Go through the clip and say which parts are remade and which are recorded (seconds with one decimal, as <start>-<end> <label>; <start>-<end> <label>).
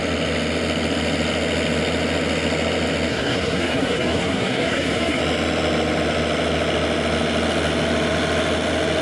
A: 0.0-3.1 recorded; 3.1-5.2 remade; 5.2-9.0 recorded